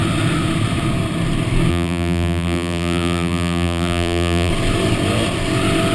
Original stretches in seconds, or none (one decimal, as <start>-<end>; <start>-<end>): 0.0-1.7; 4.5-5.9